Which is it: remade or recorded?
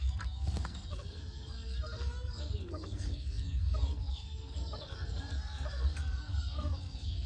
remade